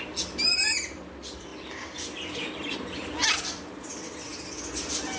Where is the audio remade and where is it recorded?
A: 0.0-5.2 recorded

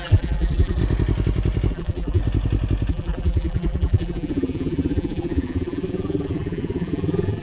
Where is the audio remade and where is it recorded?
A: 0.0-0.8 remade; 0.8-1.7 recorded; 1.7-2.2 remade; 2.2-2.9 recorded; 2.9-7.4 remade

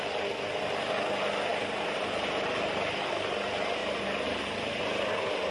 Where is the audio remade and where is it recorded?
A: 0.0-1.5 recorded; 1.5-2.9 remade; 2.9-3.8 recorded; 3.8-4.7 remade; 4.7-5.5 recorded

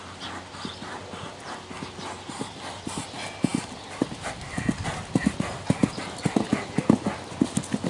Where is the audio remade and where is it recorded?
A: 0.0-7.9 recorded